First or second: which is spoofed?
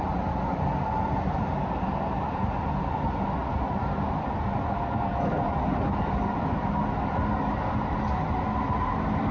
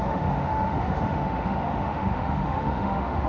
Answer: second